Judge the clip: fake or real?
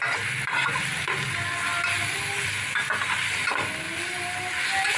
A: real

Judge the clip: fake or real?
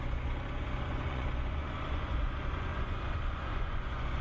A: fake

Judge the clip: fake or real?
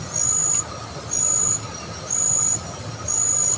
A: real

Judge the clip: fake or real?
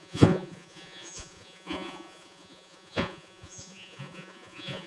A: fake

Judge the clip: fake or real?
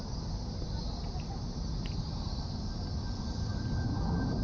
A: real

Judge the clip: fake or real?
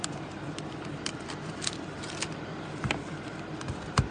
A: fake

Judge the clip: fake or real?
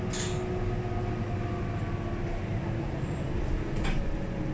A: real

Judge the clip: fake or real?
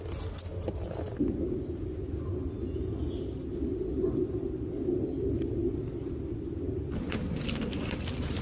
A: real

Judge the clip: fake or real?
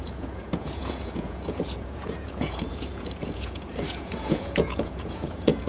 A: fake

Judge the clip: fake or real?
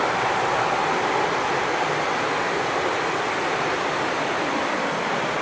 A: real